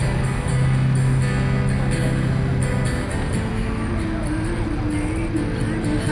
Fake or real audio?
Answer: real